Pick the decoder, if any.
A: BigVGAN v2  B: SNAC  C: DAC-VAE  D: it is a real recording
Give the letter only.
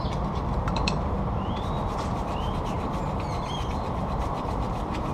A